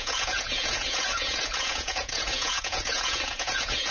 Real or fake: fake